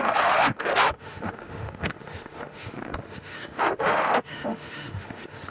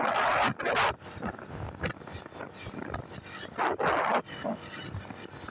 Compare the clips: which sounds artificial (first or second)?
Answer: first